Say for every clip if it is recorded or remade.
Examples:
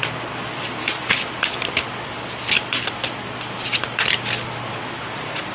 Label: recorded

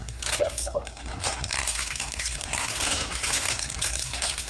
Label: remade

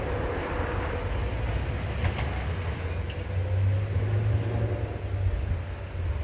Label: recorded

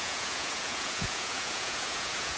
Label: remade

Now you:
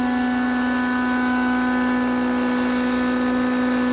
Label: recorded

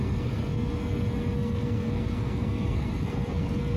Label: remade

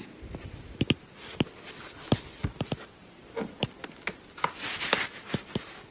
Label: recorded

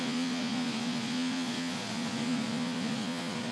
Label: remade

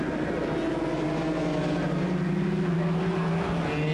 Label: recorded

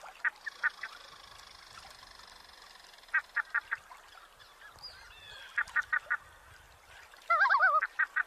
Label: recorded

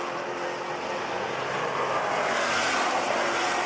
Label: recorded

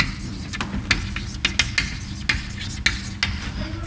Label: recorded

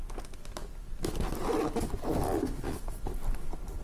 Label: recorded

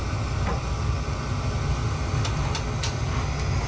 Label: recorded